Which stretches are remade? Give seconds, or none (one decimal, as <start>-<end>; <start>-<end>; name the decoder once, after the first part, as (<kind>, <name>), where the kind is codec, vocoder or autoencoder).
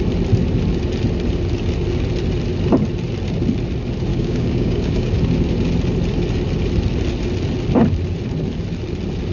4.1-5.1 (codec, DAC)